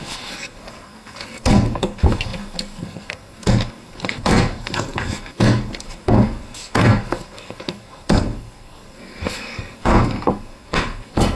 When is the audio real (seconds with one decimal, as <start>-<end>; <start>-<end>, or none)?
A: none

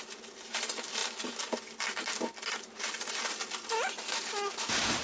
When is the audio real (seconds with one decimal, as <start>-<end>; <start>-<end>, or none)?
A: 0.0-5.0

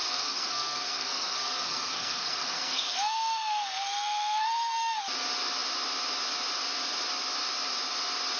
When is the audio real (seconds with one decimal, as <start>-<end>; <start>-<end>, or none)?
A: 5.0-8.4

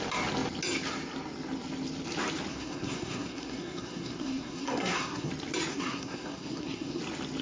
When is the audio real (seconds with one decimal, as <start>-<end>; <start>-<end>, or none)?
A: 0.0-2.5; 5.3-5.7; 7.0-7.4